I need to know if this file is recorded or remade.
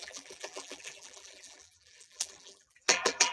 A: remade